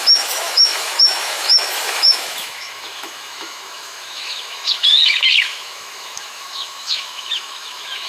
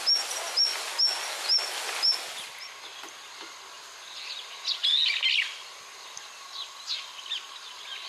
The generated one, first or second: first